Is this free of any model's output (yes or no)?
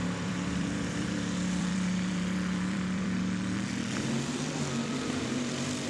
no